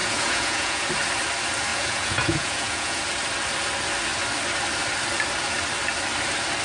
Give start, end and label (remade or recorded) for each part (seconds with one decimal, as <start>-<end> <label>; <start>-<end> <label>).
0.0-0.9 remade; 0.9-1.7 recorded; 1.7-3.0 remade; 3.0-6.6 recorded